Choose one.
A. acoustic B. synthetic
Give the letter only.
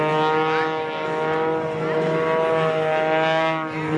A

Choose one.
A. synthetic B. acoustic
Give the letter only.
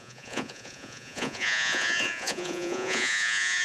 A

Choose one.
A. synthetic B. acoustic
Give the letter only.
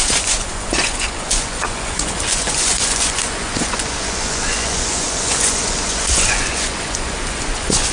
A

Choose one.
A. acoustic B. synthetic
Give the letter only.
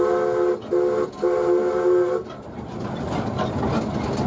A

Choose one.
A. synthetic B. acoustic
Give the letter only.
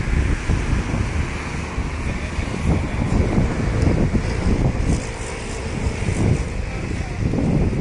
B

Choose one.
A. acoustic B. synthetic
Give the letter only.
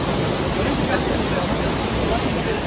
A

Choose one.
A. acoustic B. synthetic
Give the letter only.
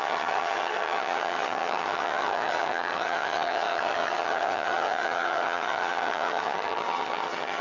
B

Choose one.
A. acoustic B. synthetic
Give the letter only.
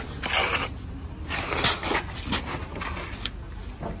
A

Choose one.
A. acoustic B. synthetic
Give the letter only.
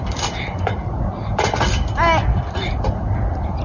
A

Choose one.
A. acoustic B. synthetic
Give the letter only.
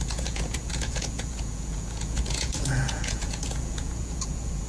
B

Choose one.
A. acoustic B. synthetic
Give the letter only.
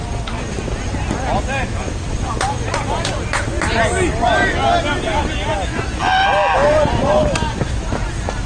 A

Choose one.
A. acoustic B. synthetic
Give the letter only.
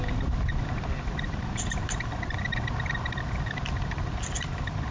A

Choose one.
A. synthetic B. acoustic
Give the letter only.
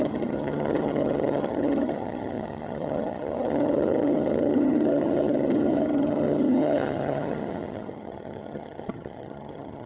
A